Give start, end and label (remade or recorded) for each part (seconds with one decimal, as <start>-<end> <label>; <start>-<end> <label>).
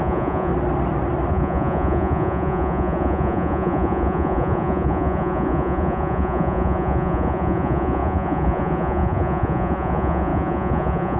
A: 0.0-0.5 remade; 0.5-1.3 recorded; 1.3-11.2 remade